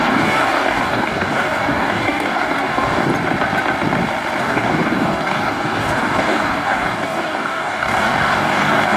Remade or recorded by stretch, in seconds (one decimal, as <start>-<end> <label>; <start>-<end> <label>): 0.0-3.1 remade; 3.1-4.4 recorded; 4.4-9.0 remade